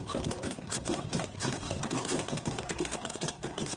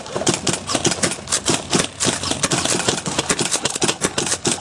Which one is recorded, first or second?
second